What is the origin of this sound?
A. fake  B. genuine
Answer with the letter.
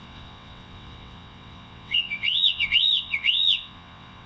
A